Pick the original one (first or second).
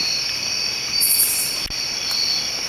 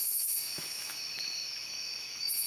first